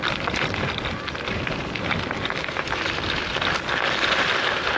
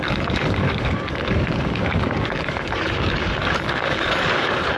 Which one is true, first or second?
first